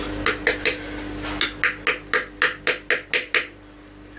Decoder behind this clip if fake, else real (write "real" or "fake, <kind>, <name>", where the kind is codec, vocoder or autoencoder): real